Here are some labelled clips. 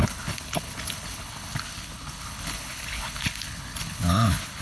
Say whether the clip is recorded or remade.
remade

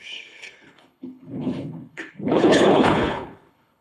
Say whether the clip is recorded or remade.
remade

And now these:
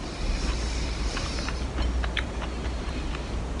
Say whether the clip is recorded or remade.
recorded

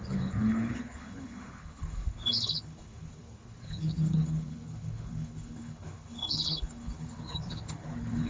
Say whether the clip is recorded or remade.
remade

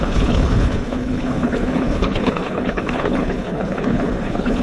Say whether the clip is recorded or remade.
remade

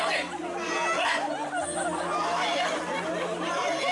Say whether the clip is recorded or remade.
recorded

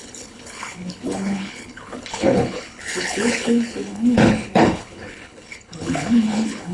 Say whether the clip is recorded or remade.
remade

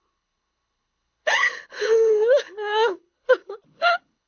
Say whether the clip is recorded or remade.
remade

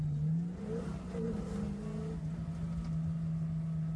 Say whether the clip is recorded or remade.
recorded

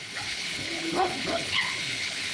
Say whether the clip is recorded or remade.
remade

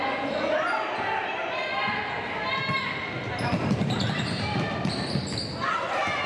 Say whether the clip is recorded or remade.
recorded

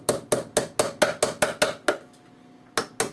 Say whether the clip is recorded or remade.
recorded